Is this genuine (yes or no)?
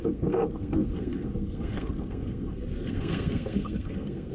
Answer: no